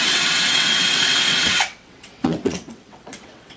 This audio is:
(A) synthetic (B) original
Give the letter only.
A